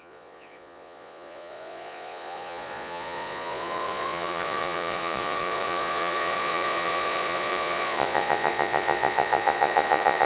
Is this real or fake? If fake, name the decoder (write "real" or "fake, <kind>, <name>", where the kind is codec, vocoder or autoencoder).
fake, vocoder, Vocos